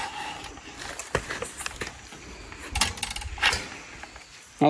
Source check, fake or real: real